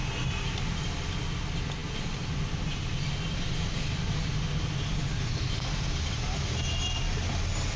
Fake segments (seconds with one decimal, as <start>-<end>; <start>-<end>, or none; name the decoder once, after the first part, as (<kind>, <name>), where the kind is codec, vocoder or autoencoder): none